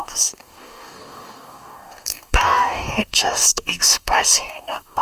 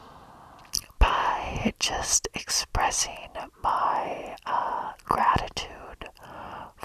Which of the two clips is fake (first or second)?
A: first